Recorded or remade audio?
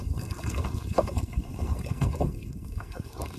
remade